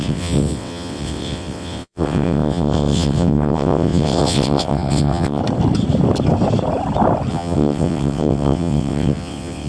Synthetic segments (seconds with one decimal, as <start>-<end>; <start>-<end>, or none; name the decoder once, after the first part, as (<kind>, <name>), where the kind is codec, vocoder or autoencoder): 0.0-5.4 (vocoder, WaveNeXt); 7.3-9.7